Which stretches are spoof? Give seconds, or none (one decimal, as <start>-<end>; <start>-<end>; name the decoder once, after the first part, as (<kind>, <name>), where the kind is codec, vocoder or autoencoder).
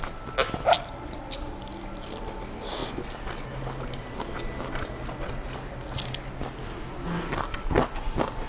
none